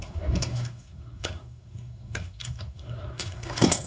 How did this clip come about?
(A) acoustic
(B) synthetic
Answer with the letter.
B